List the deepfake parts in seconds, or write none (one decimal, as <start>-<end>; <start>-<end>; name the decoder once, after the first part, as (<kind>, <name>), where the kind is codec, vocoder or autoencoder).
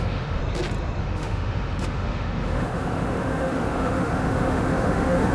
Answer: 0.0-0.4 (autoencoder, DAC-VAE); 1.0-5.3